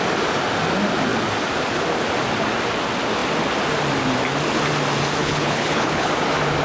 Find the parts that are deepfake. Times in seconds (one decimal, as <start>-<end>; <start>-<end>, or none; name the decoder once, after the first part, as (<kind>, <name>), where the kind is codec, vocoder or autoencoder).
5.2-6.1 (codec, HILCodec)